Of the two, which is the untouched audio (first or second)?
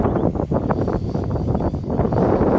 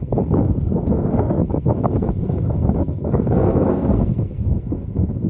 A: first